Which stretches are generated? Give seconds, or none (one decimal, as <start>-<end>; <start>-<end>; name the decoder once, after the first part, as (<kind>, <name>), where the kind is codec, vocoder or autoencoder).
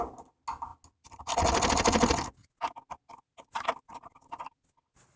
none